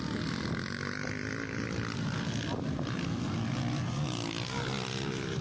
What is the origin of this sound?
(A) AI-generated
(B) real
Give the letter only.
B